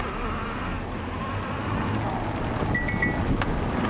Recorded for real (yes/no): yes